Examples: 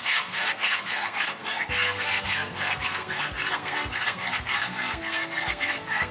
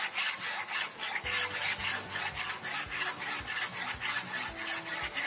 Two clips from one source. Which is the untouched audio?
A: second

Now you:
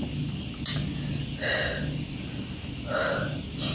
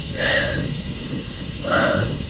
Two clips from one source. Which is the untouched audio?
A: first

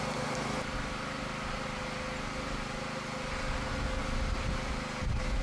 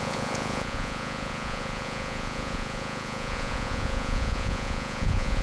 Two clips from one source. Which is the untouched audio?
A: first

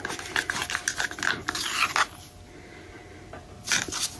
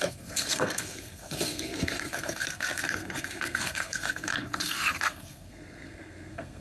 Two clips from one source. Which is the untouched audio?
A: first